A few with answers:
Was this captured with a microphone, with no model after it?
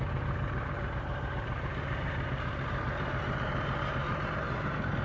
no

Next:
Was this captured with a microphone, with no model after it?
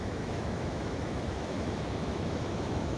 no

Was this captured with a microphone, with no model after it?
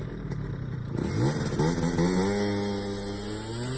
yes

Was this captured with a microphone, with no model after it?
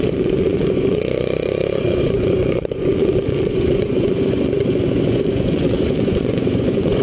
no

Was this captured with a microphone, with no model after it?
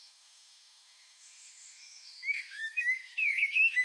no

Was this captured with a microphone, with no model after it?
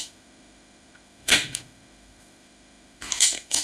no